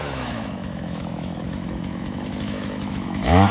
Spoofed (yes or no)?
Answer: yes